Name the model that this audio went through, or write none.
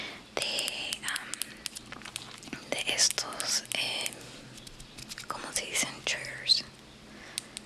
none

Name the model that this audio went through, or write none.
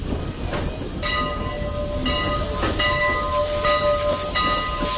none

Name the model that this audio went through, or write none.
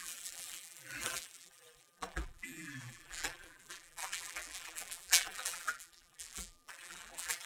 vocoder, BigVGAN v2